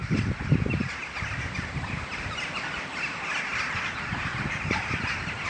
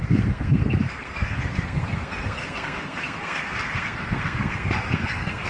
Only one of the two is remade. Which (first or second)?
second